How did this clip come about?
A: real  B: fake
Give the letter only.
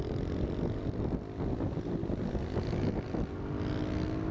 A